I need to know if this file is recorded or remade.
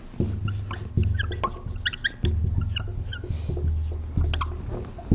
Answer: recorded